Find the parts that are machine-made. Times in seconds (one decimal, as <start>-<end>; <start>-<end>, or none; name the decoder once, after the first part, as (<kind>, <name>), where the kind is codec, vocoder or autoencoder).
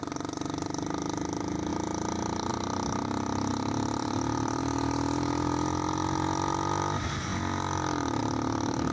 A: 3.5-4.6 (vocoder, BigVGAN v2)